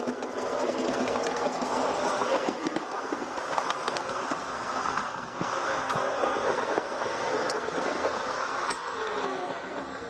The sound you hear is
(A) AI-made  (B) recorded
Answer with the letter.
A